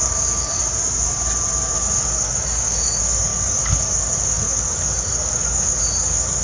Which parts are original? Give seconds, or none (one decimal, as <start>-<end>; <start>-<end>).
0.6-1.7